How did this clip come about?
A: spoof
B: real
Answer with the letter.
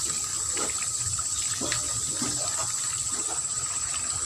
B